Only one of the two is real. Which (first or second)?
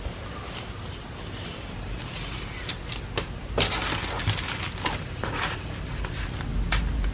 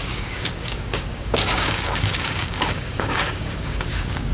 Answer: first